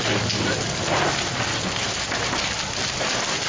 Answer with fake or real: real